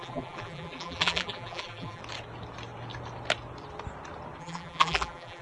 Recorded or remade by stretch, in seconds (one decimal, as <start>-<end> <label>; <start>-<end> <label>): 0.0-2.0 remade; 2.0-4.4 recorded; 4.4-5.4 remade